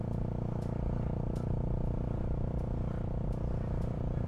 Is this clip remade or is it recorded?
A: recorded